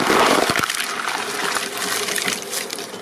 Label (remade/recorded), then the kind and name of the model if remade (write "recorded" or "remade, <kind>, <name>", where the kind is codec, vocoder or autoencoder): recorded